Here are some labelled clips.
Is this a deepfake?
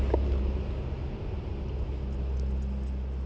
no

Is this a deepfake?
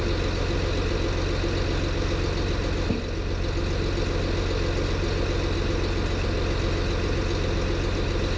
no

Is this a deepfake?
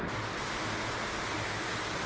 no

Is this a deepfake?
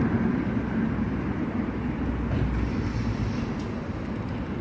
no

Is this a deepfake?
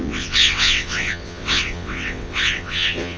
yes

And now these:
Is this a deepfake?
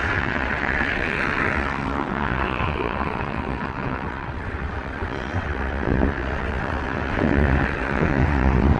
yes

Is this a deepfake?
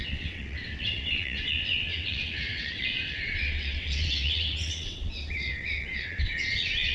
yes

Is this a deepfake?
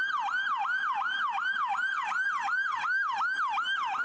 no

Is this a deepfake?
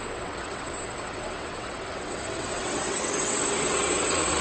yes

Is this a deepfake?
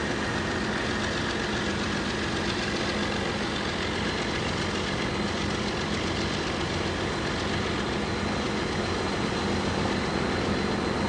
no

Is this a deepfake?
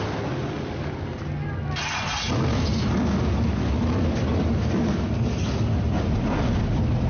no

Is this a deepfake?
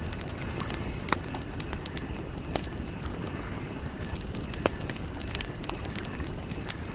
no